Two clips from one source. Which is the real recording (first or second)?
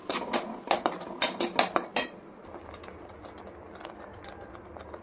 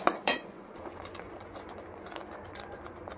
first